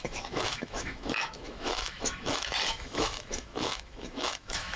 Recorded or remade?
remade